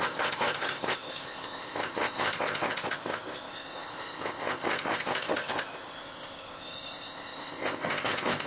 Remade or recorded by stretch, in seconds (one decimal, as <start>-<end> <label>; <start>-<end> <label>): 0.0-8.5 remade